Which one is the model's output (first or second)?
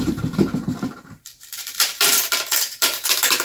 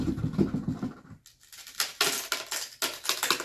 first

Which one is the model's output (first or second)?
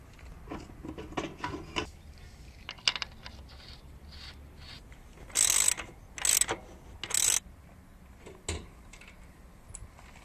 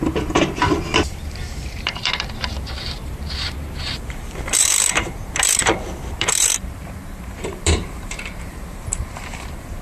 second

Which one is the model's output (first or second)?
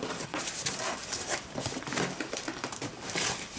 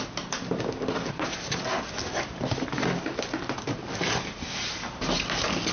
first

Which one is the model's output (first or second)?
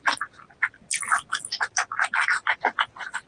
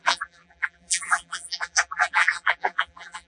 second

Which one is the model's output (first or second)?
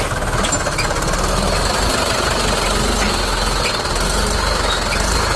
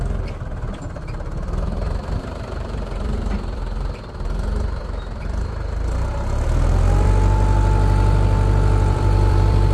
second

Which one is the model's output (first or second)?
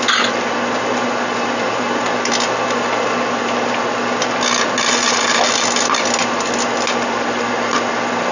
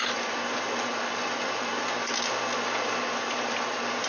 second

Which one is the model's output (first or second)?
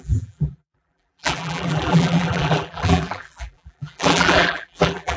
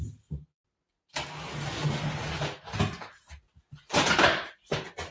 first